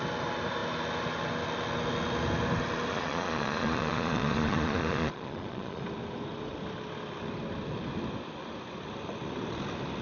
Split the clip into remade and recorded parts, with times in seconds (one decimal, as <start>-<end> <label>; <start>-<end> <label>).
0.0-2.9 recorded; 2.9-5.8 remade; 5.8-10.0 recorded